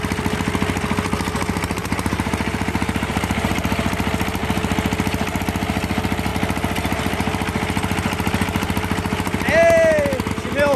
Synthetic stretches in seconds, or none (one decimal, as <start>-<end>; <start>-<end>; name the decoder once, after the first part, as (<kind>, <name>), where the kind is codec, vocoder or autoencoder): 1.8-3.5 (vocoder, BigVGAN v2)